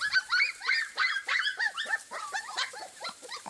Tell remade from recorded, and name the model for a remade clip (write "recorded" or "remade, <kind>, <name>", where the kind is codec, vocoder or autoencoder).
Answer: remade, vocoder, BigVGAN v2